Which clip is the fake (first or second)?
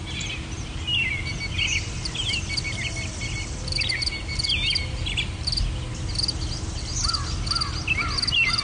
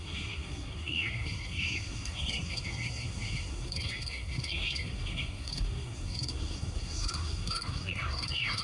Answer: second